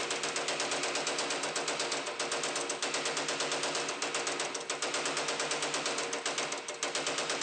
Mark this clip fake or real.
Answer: real